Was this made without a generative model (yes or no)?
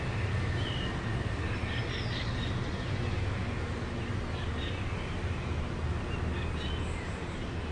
yes